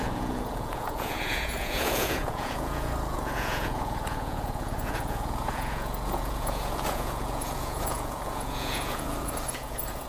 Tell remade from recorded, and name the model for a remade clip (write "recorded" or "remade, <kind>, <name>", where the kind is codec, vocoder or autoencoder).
remade, vocoder, Vocos